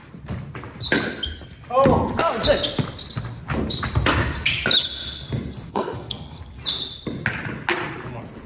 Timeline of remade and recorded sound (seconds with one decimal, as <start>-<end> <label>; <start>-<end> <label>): 0.0-5.7 recorded; 5.7-6.4 remade; 6.4-8.5 recorded